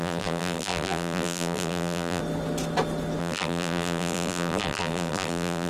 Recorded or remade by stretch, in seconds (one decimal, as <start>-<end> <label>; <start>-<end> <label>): 0.0-2.2 remade; 2.2-3.2 recorded; 3.2-5.7 remade